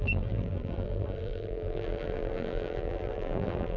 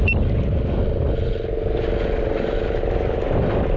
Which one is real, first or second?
second